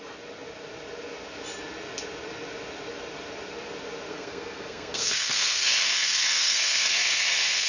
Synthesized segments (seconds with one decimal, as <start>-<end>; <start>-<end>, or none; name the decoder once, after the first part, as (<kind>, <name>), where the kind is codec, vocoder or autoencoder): 4.1-7.7 (codec, SNAC)